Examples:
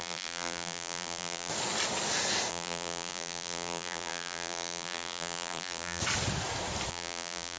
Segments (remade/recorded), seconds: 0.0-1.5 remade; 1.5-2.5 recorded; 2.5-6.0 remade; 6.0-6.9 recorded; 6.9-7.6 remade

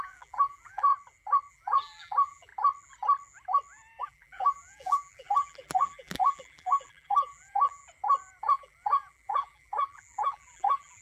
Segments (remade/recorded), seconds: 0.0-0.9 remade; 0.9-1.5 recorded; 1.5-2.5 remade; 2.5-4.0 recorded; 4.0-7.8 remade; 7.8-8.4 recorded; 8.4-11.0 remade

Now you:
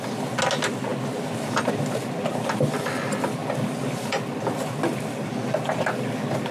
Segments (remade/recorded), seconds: 0.0-6.5 recorded

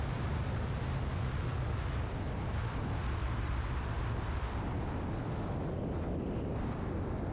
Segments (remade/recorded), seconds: 0.0-3.2 recorded; 3.2-4.0 remade; 4.0-7.3 recorded

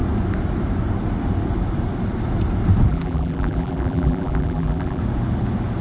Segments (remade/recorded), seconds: 0.0-2.9 recorded; 2.9-5.0 remade; 5.0-5.8 recorded

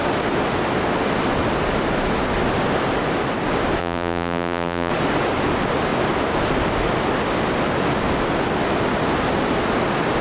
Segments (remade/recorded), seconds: 0.0-3.8 recorded; 3.8-4.9 remade; 4.9-10.2 recorded

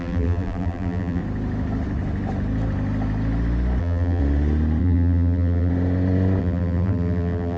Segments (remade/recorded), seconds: 0.0-1.2 remade; 1.2-3.8 recorded; 3.8-4.2 remade; 4.2-4.8 recorded; 4.8-5.7 remade; 5.7-6.4 recorded; 6.4-7.6 remade